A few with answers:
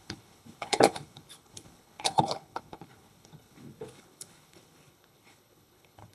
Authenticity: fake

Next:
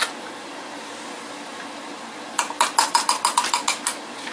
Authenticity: real